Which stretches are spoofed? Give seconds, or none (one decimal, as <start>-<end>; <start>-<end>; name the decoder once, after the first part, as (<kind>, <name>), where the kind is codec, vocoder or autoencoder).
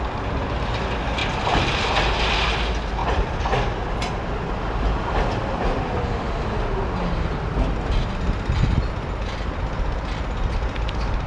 1.2-2.0 (vocoder, BigVGAN v2); 3.0-3.6